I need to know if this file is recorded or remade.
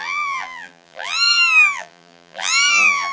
remade